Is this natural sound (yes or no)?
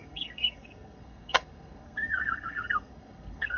no